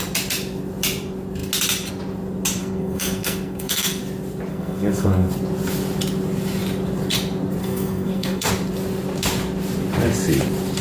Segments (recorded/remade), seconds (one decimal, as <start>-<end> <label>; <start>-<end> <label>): 0.0-2.6 recorded; 2.6-4.0 remade; 4.0-4.5 recorded; 4.5-5.3 remade; 5.3-7.6 recorded; 7.6-8.5 remade; 8.5-10.8 recorded